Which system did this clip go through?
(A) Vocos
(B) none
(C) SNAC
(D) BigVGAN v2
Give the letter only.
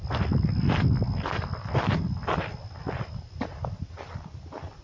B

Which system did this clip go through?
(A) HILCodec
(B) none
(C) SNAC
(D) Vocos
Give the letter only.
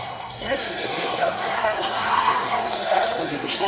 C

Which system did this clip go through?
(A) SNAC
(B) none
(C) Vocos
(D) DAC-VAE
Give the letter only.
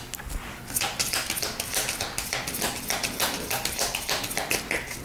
B